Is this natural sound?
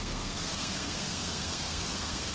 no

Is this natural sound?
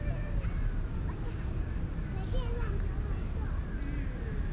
yes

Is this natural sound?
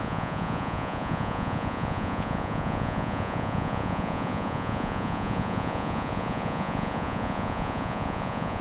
no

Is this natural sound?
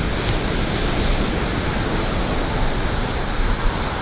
yes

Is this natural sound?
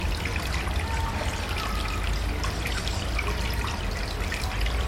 yes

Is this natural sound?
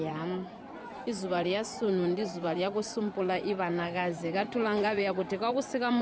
no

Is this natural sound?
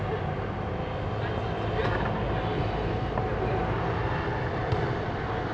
yes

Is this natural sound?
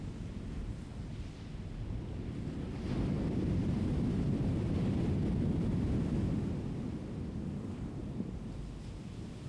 yes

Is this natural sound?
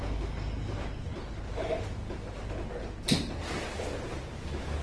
yes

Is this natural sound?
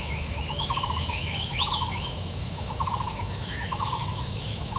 no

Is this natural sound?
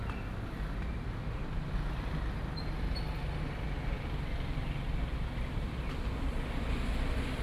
yes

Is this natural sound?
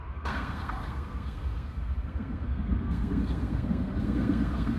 no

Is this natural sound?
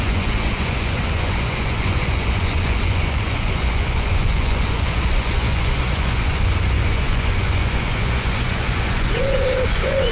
no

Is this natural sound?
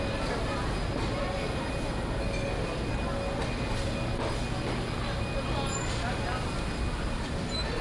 yes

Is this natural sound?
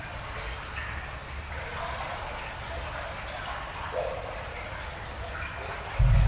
yes